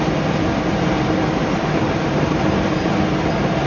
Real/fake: real